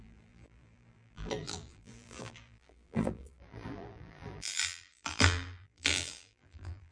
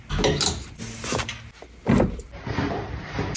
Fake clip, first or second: first